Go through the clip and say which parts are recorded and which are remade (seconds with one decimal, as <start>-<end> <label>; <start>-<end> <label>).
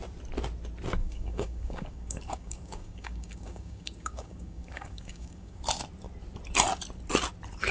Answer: 0.0-1.0 recorded; 1.0-5.6 remade; 5.6-7.7 recorded